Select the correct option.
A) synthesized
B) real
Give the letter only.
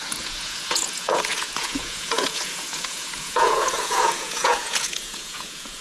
A